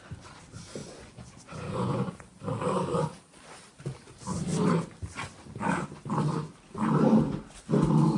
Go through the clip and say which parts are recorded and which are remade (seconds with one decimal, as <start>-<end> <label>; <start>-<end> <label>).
0.0-0.8 recorded; 0.8-2.1 remade; 2.1-8.2 recorded